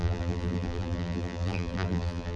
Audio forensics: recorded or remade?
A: remade